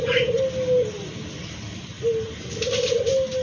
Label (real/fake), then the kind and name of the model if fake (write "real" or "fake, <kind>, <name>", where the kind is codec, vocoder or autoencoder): real